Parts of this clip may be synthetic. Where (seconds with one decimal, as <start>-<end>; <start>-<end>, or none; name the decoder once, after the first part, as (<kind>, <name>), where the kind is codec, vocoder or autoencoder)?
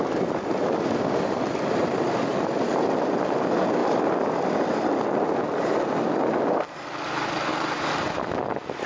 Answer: 7.5-8.3 (vocoder, BigVGAN v2)